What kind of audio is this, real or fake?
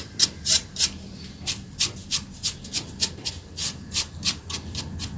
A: real